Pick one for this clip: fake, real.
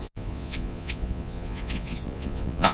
fake